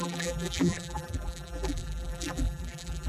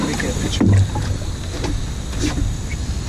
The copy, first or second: first